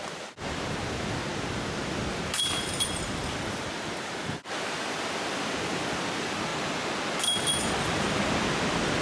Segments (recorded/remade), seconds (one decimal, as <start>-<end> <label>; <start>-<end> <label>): 0.0-6.5 remade; 6.5-7.7 recorded; 7.7-9.0 remade